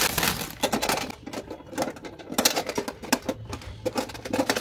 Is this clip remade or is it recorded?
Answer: recorded